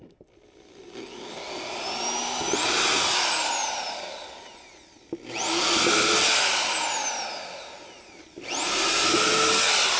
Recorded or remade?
recorded